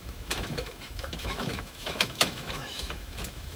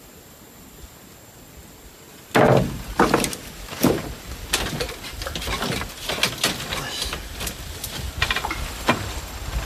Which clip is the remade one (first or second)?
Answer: first